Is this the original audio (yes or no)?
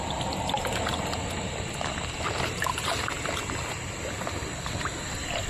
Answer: yes